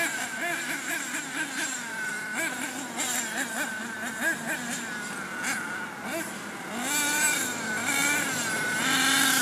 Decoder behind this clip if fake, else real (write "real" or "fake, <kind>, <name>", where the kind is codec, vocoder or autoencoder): real